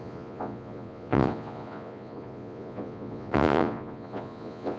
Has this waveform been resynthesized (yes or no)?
yes